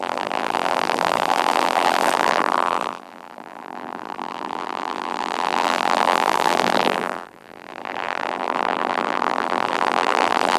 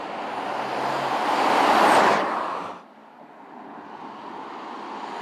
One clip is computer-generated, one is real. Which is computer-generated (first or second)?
first